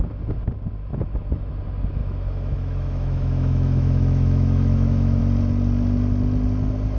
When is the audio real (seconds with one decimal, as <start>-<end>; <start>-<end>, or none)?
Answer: 0.0-0.9; 1.5-2.0; 5.2-7.0